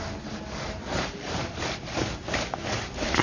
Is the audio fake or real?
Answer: real